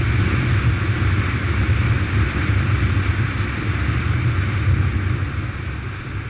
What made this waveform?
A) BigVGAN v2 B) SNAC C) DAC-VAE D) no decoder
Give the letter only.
D